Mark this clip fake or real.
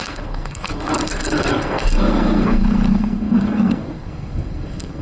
fake